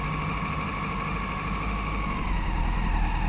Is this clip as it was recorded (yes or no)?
yes